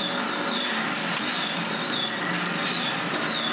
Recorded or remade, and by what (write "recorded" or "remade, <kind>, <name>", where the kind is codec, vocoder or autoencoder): recorded